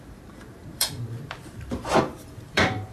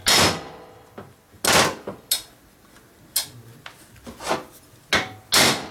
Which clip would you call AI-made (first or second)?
first